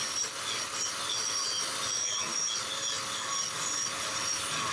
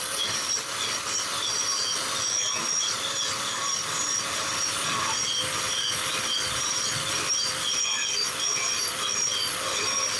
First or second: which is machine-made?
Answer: second